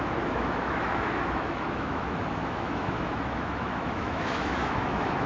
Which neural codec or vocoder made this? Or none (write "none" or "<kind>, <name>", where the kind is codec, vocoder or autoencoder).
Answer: autoencoder, DAC-VAE